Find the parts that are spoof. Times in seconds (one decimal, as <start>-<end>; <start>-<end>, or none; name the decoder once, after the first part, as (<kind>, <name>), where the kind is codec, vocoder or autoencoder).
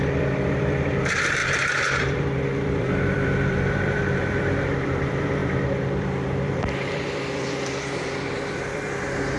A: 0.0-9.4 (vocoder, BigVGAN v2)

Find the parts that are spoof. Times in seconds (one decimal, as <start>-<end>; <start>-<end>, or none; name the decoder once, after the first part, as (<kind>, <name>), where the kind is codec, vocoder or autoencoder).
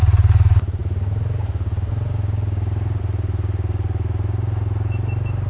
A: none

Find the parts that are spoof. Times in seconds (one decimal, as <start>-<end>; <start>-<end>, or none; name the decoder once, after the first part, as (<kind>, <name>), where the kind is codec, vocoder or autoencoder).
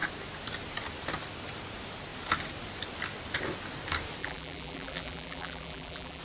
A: 4.2-6.2 (vocoder, BigVGAN v2)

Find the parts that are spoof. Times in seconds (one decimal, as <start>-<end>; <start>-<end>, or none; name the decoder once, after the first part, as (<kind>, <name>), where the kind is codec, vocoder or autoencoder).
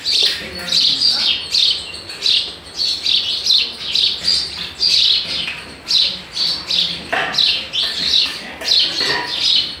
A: 8.0-8.6 (codec, DAC)